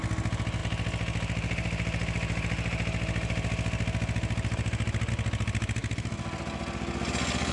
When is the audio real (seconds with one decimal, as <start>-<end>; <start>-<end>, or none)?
0.0-7.5